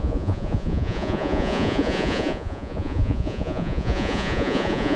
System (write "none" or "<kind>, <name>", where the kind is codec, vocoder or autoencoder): vocoder, Vocos